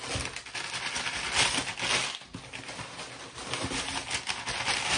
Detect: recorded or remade recorded